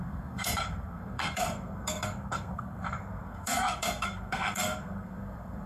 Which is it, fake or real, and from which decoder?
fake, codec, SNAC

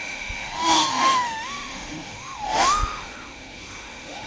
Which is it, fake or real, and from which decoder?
fake, autoencoder, DAC-VAE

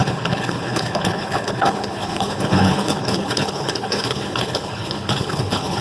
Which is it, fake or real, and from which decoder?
fake, codec, HILCodec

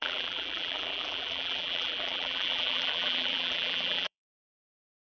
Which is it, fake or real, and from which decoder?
fake, vocoder, BigVGAN v2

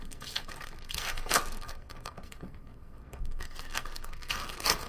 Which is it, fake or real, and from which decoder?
fake, codec, SNAC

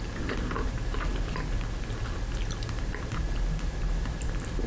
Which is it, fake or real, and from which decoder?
real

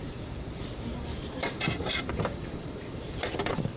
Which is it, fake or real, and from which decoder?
fake, vocoder, BigVGAN v2